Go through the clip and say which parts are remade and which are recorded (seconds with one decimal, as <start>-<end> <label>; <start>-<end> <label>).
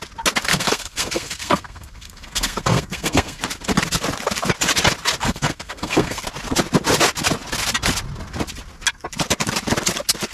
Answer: 0.0-0.5 recorded; 0.5-3.4 remade; 3.4-5.2 recorded; 5.2-6.2 remade; 6.2-10.3 recorded